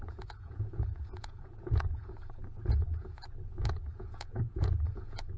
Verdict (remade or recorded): remade